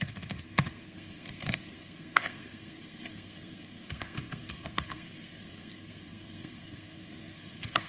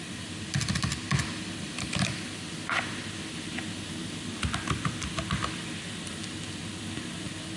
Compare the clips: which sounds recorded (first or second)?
second